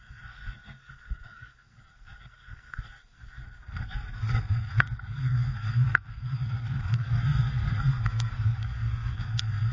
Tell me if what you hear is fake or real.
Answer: fake